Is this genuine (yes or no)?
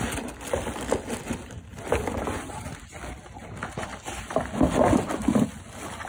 yes